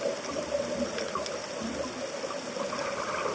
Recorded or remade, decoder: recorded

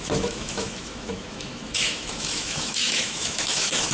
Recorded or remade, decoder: remade, autoencoder, DAC-VAE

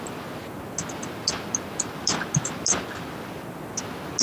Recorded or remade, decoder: recorded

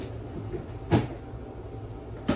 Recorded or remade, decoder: recorded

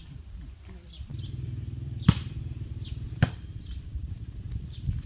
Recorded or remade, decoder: remade, vocoder, BigVGAN v2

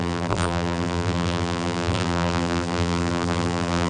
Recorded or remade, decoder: remade, vocoder, BigVGAN v2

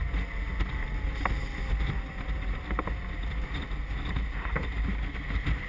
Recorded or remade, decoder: recorded